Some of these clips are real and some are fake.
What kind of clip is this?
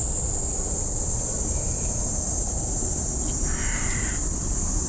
real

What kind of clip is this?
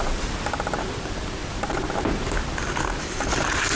real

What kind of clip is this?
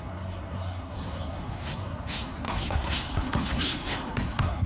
fake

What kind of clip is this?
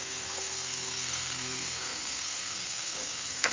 fake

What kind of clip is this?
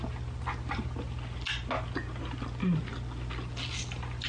real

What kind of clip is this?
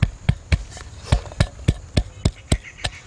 real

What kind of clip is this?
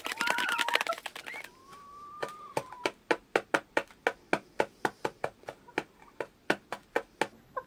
real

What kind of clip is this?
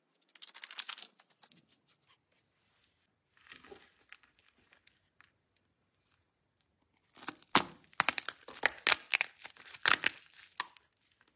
real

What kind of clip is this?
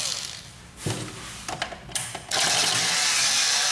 real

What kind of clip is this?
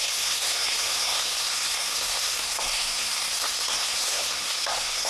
fake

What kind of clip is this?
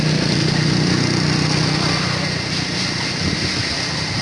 real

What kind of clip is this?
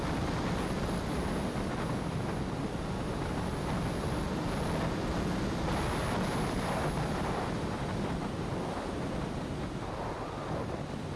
real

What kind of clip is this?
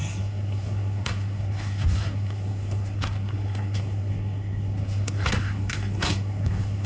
fake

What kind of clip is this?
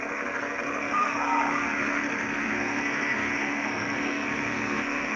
fake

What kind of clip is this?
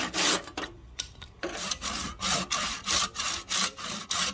real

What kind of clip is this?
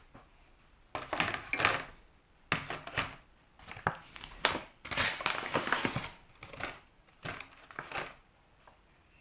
real